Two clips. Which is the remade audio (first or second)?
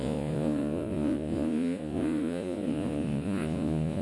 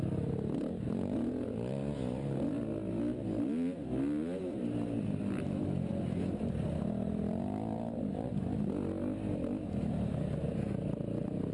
first